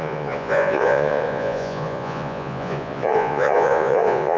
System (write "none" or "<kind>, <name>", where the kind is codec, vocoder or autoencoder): vocoder, Vocos